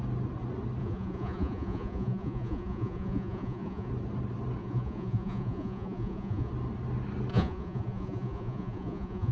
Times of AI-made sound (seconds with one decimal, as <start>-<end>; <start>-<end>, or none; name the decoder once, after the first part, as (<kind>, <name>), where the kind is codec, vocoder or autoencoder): 0.8-3.9 (vocoder, Vocos); 4.6-6.5; 7.3-9.3